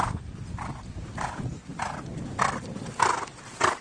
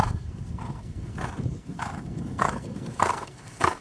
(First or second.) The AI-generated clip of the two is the second